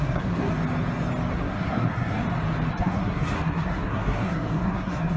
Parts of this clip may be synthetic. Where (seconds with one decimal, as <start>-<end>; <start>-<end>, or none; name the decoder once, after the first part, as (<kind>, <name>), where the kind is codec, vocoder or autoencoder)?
0.0-0.5 (codec, SNAC); 1.3-2.2; 2.7-5.2